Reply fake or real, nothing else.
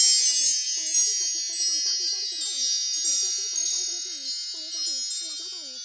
real